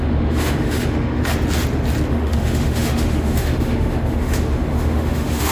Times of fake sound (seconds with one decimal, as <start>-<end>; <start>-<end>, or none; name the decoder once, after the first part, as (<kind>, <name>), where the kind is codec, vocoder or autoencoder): 0.0-1.2 (autoencoder, DAC-VAE); 2.1-5.5